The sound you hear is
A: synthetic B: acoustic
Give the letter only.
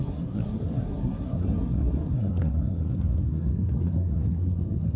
A